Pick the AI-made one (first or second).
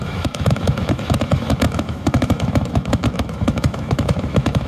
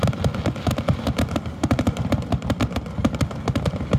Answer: first